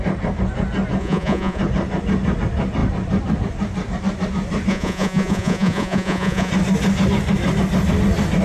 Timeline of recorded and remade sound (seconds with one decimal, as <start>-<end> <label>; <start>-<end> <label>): 0.0-1.0 recorded; 1.0-1.6 remade; 1.6-4.7 recorded; 4.7-6.5 remade; 6.5-8.4 recorded

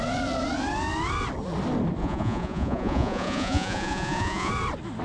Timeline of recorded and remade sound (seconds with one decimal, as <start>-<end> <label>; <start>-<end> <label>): 0.0-2.0 recorded; 2.0-4.5 remade; 4.5-5.0 recorded

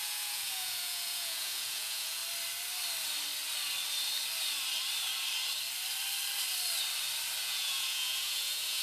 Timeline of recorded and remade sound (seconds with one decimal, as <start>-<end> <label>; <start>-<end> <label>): 0.0-2.2 remade; 2.2-7.4 recorded; 7.4-8.8 remade

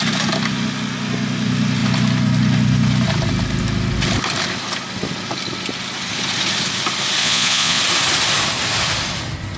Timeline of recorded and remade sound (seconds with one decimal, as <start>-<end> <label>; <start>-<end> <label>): 0.0-7.2 recorded; 7.2-7.8 remade; 7.8-9.6 recorded

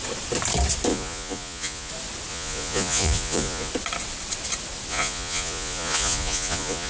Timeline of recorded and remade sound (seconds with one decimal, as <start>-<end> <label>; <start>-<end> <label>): 0.0-0.9 recorded; 0.9-1.9 remade; 1.9-2.3 recorded; 2.3-3.7 remade; 3.7-4.9 recorded; 4.9-6.9 remade

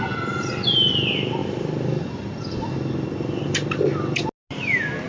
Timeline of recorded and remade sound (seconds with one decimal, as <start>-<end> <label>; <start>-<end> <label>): 0.0-5.1 recorded

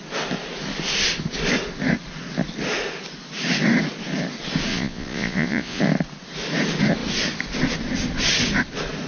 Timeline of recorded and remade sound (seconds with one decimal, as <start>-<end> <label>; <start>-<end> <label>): 0.0-4.7 recorded; 4.7-5.8 remade; 5.8-9.1 recorded